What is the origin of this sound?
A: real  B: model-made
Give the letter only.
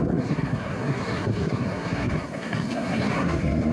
B